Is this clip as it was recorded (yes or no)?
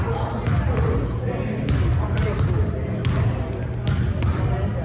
yes